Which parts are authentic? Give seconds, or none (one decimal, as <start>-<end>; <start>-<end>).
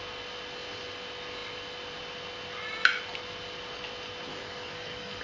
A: 0.0-4.3